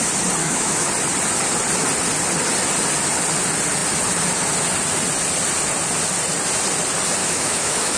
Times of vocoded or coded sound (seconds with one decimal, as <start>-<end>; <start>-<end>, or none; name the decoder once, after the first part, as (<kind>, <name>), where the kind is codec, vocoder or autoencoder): 0.4-0.9 (autoencoder, DAC-VAE); 7.2-8.0